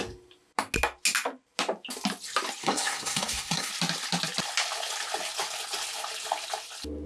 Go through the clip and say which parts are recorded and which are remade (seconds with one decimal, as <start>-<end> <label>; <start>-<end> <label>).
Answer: 0.0-2.6 recorded; 2.6-3.7 remade; 3.7-7.1 recorded